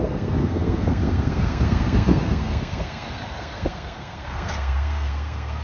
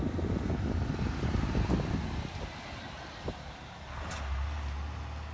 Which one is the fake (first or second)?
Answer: first